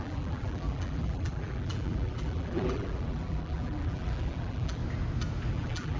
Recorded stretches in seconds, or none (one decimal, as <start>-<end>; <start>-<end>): 4.8-5.5